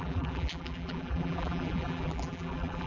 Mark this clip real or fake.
fake